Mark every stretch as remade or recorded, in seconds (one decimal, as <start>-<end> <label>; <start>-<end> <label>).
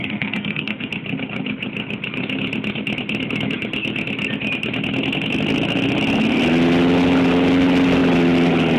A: 0.0-0.9 remade; 0.9-8.8 recorded